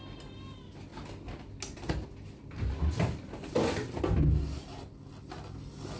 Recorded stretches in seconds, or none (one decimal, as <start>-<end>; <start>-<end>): 0.0-6.0